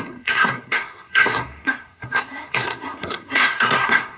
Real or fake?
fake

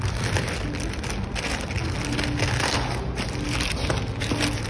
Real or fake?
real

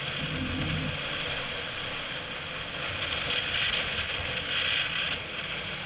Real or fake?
real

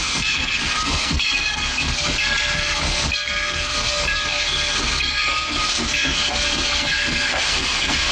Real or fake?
fake